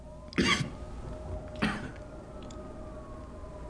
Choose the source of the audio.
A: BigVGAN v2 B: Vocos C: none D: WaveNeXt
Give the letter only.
C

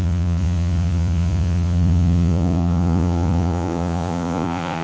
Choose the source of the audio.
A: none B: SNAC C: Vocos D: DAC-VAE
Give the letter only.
C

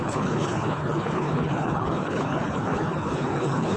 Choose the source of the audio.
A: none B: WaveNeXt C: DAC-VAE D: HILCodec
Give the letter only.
D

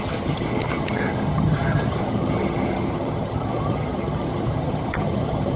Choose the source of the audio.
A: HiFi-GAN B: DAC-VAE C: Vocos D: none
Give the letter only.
A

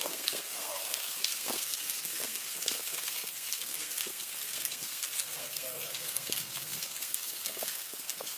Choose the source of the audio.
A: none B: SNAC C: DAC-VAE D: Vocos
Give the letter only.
B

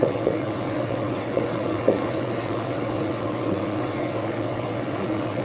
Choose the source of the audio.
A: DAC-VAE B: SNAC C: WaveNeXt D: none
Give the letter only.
C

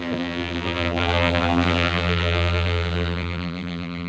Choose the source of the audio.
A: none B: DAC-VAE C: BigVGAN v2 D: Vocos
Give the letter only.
C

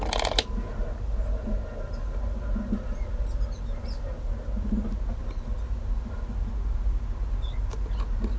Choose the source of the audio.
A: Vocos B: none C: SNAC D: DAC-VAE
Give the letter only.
B